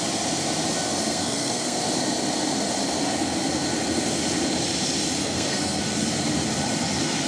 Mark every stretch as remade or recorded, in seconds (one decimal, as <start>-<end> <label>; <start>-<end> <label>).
0.0-1.1 recorded; 1.1-1.8 remade; 1.8-5.2 recorded; 5.2-5.8 remade; 5.8-7.3 recorded